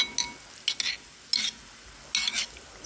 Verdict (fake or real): real